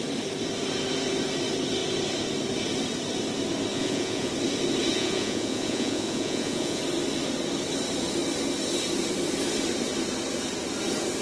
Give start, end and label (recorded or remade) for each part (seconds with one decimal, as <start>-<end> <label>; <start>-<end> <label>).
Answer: 0.0-3.7 recorded; 3.7-4.3 remade; 4.3-4.9 recorded; 4.9-6.8 remade; 6.8-11.2 recorded